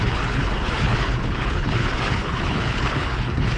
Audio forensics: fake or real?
fake